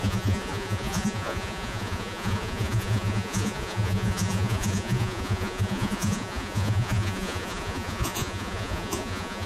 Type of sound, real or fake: fake